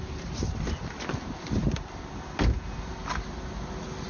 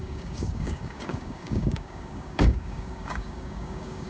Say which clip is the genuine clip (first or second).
first